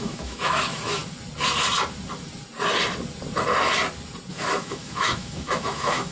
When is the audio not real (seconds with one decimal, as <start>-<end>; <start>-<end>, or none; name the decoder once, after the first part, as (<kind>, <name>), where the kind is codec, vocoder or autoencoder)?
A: 0.0-1.0 (autoencoder, DAC-VAE); 4.3-6.1